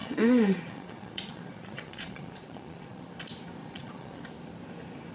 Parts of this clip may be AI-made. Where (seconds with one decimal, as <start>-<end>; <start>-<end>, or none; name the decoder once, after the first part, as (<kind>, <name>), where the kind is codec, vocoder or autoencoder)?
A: 0.0-3.1 (vocoder, Vocos); 3.6-4.2